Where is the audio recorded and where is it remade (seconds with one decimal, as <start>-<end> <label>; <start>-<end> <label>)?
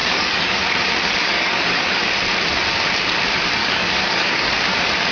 0.0-0.6 remade; 0.6-1.2 recorded; 1.2-2.0 remade; 2.0-3.6 recorded; 3.6-4.5 remade; 4.5-5.1 recorded